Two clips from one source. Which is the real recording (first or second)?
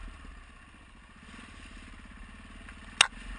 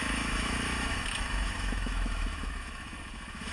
first